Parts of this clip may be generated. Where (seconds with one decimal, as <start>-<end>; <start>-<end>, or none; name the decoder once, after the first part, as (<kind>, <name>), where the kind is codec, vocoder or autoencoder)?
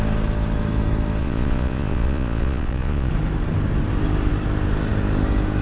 1.2-3.1 (vocoder, Vocos)